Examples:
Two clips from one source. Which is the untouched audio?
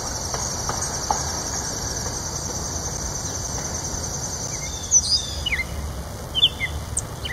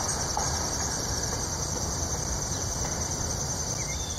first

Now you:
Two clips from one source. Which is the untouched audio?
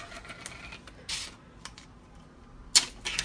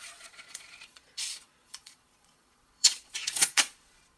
first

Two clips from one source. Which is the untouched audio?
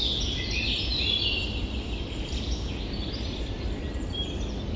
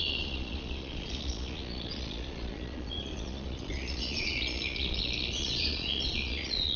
first